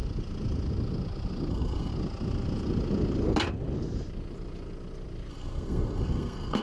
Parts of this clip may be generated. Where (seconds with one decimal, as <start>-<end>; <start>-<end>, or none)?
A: 1.5-1.9; 5.3-6.6